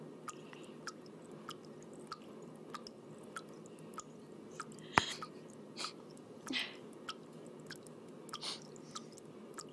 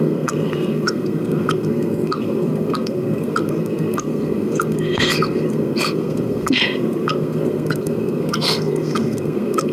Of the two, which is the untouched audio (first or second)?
first